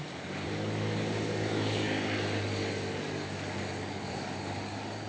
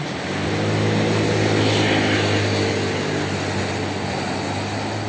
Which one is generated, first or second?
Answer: first